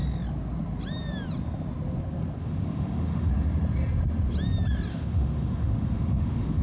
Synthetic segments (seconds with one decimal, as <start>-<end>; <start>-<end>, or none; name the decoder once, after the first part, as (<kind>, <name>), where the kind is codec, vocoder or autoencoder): 2.4-3.3 (autoencoder, DAC-VAE); 4.9-6.6